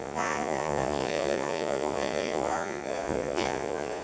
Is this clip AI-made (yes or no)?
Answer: yes